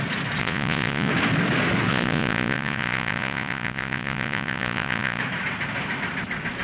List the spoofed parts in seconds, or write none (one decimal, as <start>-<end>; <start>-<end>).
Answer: 0.4-1.1; 1.9-5.2